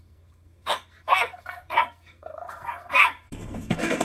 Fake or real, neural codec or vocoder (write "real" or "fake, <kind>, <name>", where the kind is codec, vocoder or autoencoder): fake, codec, SNAC